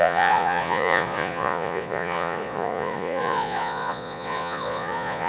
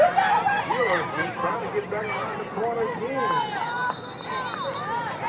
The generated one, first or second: first